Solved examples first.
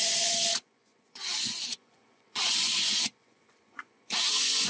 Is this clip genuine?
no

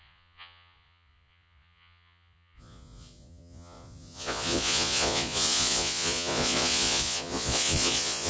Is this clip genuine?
no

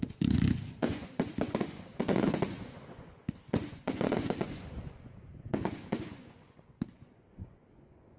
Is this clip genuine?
no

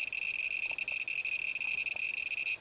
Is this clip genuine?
yes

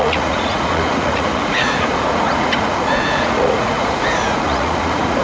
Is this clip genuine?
no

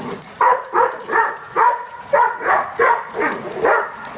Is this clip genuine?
no